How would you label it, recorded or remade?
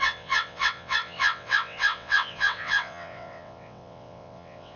remade